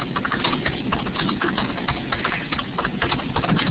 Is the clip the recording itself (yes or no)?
yes